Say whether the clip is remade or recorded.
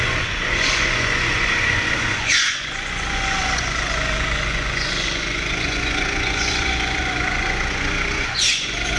remade